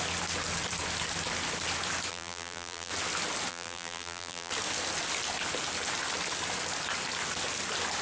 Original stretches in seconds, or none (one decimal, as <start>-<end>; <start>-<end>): 0.0-2.1; 2.9-3.5; 4.5-8.0